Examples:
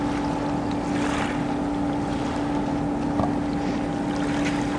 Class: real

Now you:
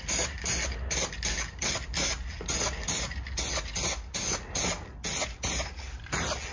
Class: real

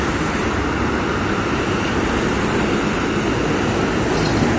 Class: real